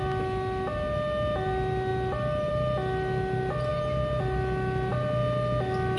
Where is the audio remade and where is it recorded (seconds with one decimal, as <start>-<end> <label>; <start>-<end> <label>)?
0.0-6.0 recorded